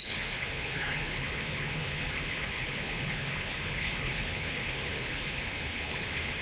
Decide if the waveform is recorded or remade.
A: remade